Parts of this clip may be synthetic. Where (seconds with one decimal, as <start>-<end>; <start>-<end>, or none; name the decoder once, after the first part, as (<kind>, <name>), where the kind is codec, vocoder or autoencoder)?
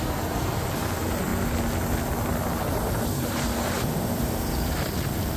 none